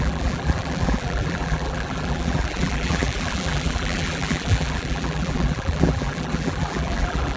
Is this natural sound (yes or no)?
no